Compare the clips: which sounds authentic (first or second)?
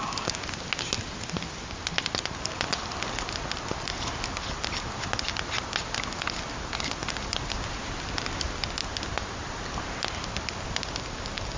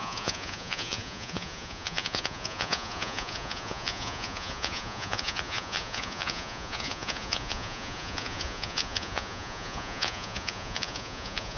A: first